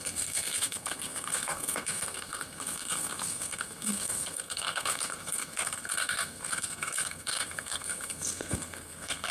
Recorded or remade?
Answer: remade